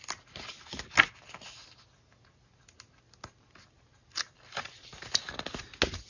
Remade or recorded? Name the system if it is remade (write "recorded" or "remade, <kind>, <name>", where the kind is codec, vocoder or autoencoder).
recorded